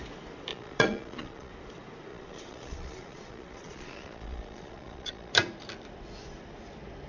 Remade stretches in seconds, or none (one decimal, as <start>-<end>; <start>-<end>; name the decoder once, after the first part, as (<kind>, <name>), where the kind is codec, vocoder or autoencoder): 0.5-1.5 (vocoder, Vocos); 2.1-5.3